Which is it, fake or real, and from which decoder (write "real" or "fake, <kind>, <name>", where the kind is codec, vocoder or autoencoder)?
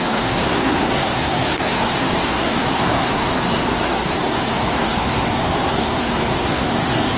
fake, codec, SNAC